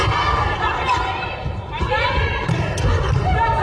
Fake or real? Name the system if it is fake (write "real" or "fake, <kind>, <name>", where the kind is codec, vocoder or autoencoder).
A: real